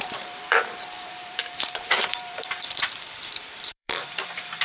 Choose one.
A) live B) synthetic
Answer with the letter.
B